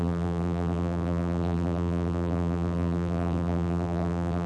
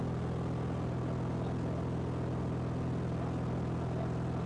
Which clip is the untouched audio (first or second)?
second